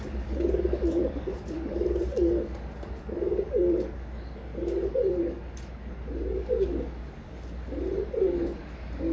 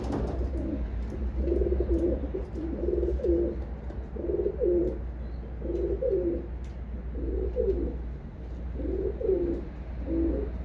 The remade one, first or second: first